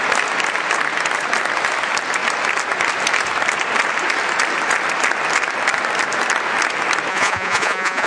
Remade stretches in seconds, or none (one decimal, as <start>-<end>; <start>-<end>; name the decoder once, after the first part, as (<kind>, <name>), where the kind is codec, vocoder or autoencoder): 7.1-8.1 (vocoder, Vocos)